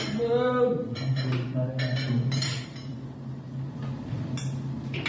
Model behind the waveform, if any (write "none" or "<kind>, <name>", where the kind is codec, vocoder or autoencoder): none